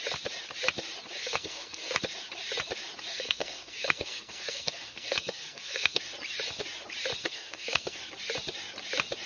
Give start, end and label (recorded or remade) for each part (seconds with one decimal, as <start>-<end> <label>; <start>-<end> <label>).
0.0-1.2 recorded; 1.2-2.0 remade; 2.0-3.1 recorded; 3.1-6.0 remade; 6.0-7.2 recorded; 7.2-8.0 remade; 8.0-9.3 recorded